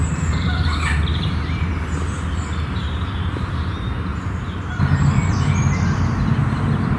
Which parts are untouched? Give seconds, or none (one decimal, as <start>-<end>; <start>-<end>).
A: 1.7-2.3; 4.1-4.7